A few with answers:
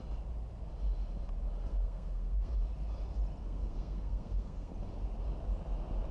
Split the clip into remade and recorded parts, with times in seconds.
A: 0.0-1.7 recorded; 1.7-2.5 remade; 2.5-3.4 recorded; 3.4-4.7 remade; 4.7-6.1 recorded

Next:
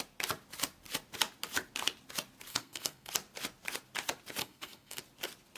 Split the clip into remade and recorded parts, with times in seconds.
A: 0.0-2.5 recorded; 2.5-3.1 remade; 3.1-4.4 recorded; 4.4-5.0 remade; 5.0-5.6 recorded

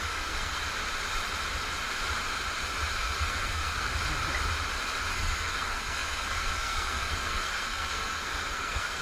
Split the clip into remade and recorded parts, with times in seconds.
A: 0.0-0.6 remade; 0.6-2.9 recorded; 2.9-3.9 remade; 3.9-5.1 recorded; 5.1-9.0 remade

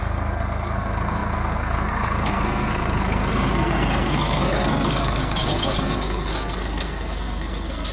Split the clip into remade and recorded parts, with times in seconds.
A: 0.0-7.9 remade

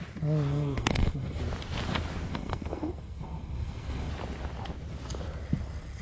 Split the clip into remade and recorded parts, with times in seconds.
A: 0.0-0.5 recorded; 0.5-1.4 remade; 1.4-2.3 recorded; 2.3-4.1 remade; 4.1-6.0 recorded

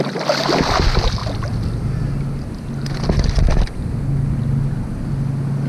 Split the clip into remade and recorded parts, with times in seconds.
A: 0.0-5.7 recorded

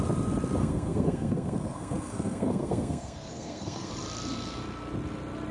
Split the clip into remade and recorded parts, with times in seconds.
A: 0.0-0.6 recorded; 0.6-3.9 remade; 3.9-5.5 recorded